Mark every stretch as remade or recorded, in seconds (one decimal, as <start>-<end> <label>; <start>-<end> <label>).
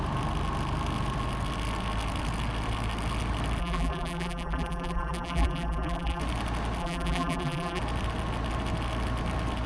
0.0-3.6 recorded; 3.6-6.2 remade; 6.2-6.8 recorded; 6.8-7.8 remade; 7.8-9.7 recorded